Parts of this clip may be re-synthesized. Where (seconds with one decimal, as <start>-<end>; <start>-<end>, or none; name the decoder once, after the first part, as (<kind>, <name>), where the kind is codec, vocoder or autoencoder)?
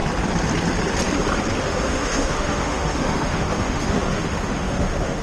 1.6-5.2 (autoencoder, DAC-VAE)